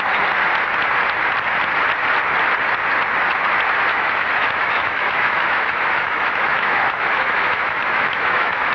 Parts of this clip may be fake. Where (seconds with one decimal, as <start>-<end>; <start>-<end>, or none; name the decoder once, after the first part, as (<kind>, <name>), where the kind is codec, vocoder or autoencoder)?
3.9-8.7 (autoencoder, DAC-VAE)